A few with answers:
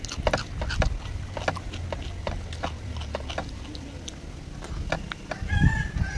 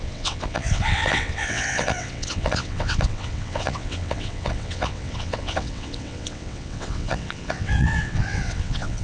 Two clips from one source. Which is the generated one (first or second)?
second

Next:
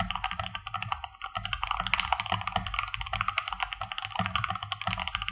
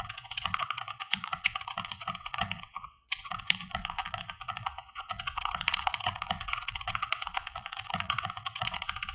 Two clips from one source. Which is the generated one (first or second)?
second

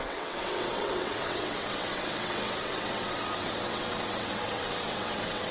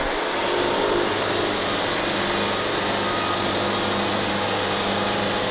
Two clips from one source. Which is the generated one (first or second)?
first